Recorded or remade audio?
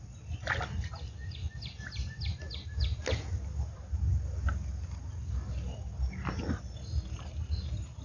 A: recorded